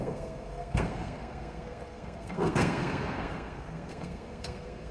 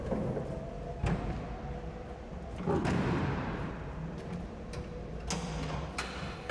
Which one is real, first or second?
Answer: second